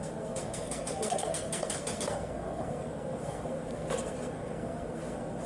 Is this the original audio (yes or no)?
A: no